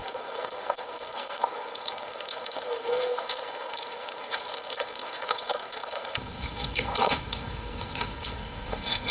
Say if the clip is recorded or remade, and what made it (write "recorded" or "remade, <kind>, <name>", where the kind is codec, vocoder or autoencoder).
remade, codec, SNAC